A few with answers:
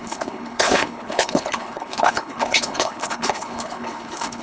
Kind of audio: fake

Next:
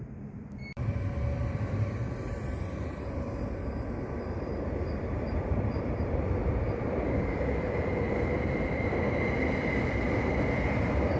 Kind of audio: fake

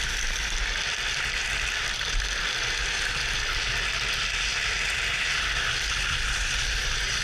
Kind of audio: real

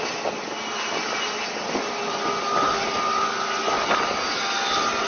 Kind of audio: real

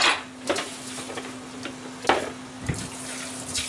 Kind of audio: real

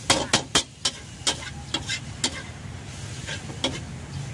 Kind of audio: real